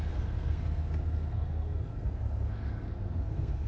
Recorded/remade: remade